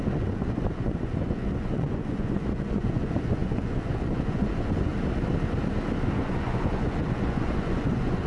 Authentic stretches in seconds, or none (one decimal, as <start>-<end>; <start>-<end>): 4.9-6.0